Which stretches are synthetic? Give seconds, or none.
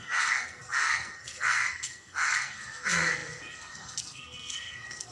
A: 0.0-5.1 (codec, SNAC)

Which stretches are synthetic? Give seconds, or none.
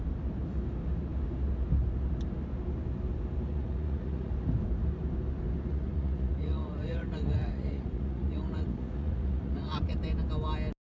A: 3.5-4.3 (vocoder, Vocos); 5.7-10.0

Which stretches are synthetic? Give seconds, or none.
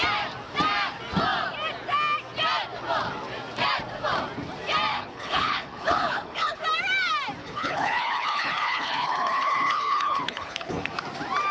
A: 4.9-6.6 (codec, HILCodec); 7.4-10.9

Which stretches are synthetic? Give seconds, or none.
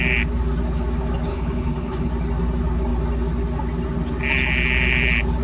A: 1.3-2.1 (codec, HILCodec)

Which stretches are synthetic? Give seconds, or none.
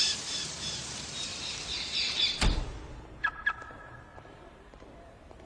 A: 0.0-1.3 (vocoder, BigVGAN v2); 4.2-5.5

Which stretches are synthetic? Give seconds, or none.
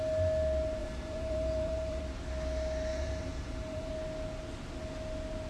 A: 0.8-2.0 (vocoder, BigVGAN v2); 2.9-3.9